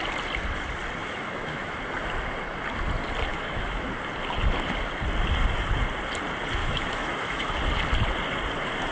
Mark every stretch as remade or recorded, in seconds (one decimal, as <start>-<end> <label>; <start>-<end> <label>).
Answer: 0.0-1.0 recorded; 1.0-1.8 remade; 1.8-3.3 recorded; 3.3-3.9 remade; 3.9-6.6 recorded; 6.6-7.5 remade; 7.5-8.9 recorded